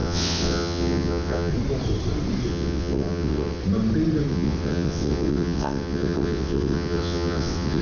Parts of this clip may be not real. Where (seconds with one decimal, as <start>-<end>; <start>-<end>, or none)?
0.0-1.5; 2.5-3.6; 4.3-7.8